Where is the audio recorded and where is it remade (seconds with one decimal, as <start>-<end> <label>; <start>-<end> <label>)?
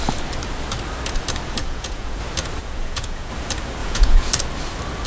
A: 0.0-1.6 recorded; 1.6-2.2 remade; 2.2-2.6 recorded; 2.6-3.3 remade; 3.3-3.8 recorded; 3.8-4.3 remade; 4.3-5.1 recorded